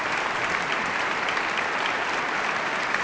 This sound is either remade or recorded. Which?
remade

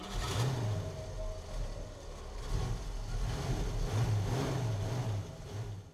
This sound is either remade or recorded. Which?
recorded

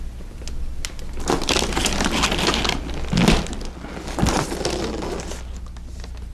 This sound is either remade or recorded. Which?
recorded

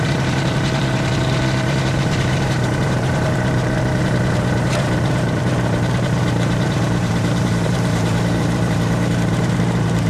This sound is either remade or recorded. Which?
remade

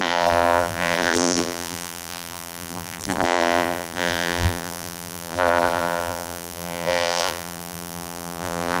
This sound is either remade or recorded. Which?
remade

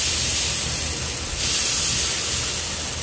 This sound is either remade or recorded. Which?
recorded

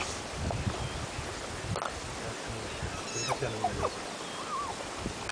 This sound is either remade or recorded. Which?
recorded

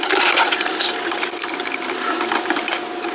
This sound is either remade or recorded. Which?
recorded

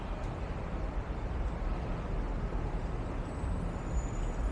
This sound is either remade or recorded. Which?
recorded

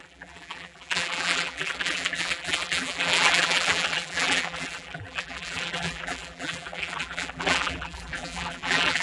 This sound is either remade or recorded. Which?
remade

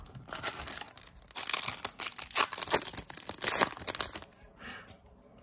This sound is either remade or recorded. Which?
recorded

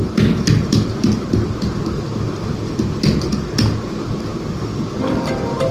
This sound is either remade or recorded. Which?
recorded